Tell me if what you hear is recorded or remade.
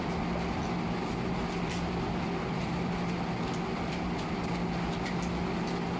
recorded